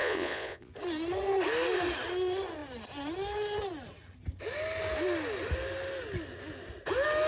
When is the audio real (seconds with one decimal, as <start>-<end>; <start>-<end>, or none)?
0.7-7.3

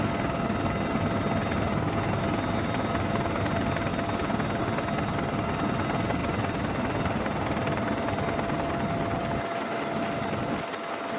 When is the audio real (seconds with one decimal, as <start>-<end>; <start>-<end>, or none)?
0.0-11.2